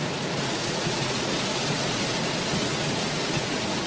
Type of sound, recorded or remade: remade